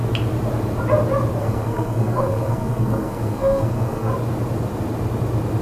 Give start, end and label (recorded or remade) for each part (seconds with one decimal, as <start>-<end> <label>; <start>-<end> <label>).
0.0-1.4 recorded; 1.4-4.1 remade; 4.1-5.6 recorded